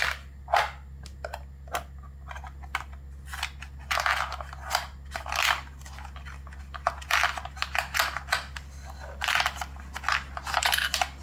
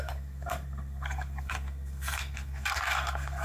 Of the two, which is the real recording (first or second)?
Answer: first